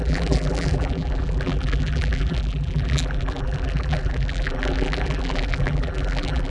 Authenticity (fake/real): fake